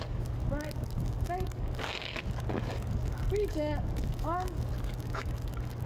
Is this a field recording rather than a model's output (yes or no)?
no